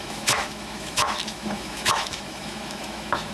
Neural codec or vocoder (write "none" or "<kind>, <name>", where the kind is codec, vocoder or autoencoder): autoencoder, DAC-VAE